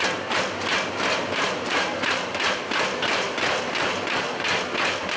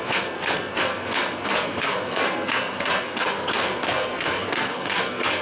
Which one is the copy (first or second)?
second